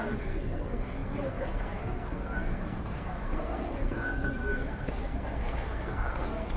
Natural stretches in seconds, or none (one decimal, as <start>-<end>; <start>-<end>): none